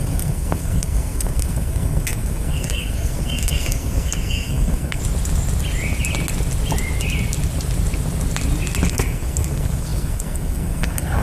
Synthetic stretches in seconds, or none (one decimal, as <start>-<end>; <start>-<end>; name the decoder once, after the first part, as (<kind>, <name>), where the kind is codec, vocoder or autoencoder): 0.0-5.0 (codec, SNAC); 8.9-11.2